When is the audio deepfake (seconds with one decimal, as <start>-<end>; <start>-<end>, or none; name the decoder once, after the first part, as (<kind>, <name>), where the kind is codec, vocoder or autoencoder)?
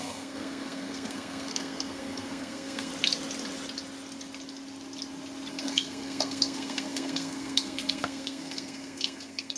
0.0-2.9 (codec, SNAC); 5.5-9.6